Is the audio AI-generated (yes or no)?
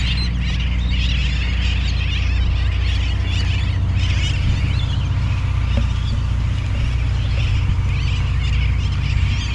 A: no